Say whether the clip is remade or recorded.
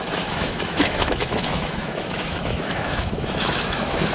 remade